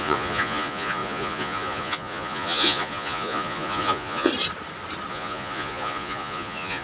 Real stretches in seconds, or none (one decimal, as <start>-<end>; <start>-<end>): 4.3-5.1